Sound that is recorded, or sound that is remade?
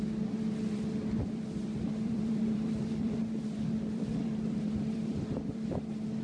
remade